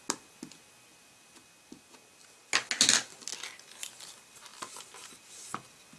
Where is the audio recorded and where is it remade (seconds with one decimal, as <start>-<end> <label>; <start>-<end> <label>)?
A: 0.0-6.0 recorded